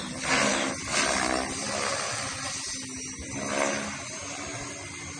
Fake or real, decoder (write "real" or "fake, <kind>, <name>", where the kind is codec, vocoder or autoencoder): real